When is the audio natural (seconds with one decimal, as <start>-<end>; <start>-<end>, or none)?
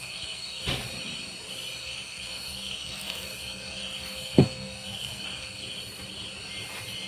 0.6-1.8; 5.6-7.1